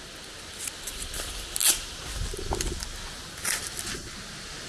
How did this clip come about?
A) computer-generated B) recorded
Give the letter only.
B